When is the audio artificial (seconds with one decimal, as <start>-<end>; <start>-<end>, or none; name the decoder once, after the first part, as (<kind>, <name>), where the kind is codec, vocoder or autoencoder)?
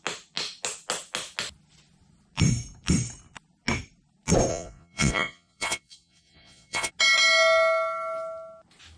4.5-6.9 (vocoder, Vocos)